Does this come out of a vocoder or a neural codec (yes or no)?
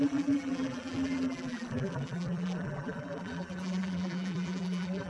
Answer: yes